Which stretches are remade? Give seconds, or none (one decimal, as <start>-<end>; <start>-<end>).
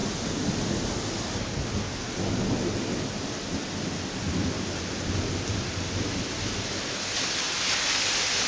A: none